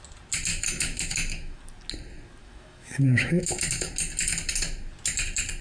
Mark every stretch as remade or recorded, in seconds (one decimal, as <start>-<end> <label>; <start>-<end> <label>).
0.0-0.5 recorded; 0.5-1.6 remade; 1.6-2.4 recorded; 2.4-3.9 remade; 3.9-5.6 recorded